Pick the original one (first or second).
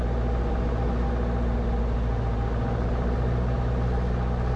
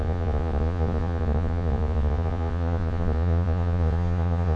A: first